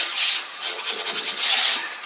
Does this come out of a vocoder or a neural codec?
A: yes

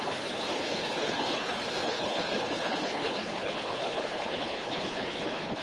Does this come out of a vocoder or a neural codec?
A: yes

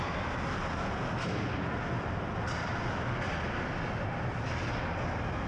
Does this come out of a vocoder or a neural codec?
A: no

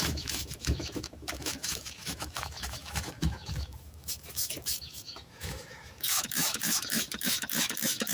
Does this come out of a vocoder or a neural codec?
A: yes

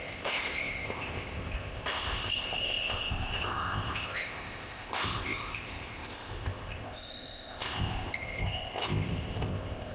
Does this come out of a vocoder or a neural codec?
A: yes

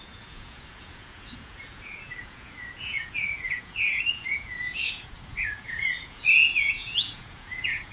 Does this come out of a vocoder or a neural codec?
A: yes